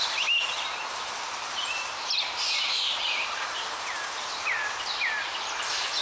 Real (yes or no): yes